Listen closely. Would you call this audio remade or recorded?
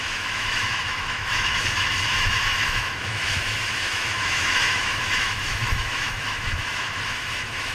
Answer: remade